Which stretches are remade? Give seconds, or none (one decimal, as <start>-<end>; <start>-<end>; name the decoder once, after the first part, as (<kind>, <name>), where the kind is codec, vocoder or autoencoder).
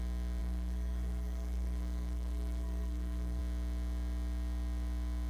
0.4-3.4 (codec, SNAC)